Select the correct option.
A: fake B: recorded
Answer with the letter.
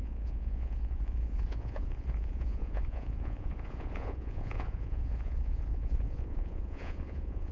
A